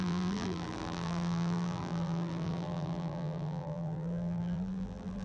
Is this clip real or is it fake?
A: fake